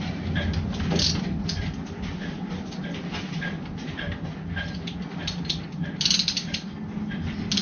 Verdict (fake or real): real